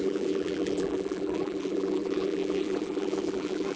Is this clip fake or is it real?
fake